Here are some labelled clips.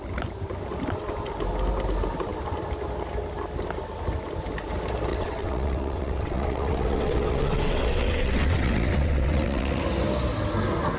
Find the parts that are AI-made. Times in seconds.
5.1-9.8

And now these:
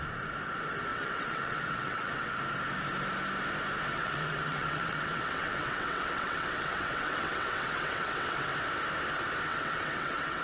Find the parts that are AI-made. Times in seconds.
0.9-2.4; 3.9-8.5; 9.5-10.4